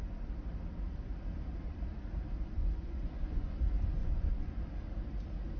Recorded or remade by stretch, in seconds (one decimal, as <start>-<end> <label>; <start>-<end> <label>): 0.0-2.6 recorded; 2.6-3.6 remade; 3.6-4.0 recorded; 4.0-4.5 remade; 4.5-5.6 recorded